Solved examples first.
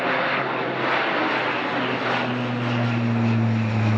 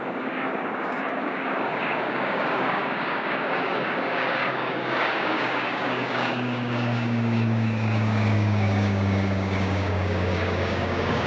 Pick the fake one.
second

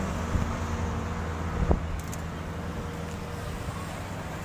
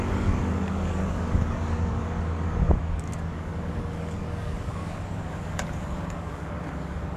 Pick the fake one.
second